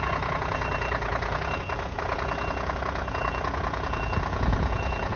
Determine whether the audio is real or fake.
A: fake